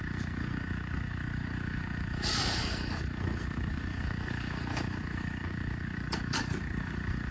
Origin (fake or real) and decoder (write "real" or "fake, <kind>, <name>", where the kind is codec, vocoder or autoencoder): fake, codec, SNAC